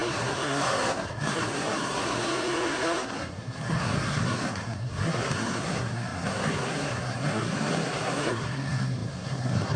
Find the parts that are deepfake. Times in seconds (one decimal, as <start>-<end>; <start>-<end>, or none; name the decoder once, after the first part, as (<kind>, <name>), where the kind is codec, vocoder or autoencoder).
0.0-9.8 (codec, SNAC)